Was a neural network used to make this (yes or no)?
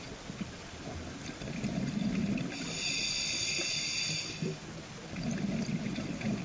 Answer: no